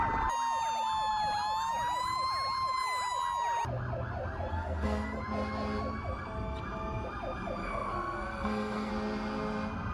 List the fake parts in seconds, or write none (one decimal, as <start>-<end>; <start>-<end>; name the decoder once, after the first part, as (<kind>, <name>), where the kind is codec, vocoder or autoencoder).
4.5-5.2 (codec, SNAC); 7.6-8.9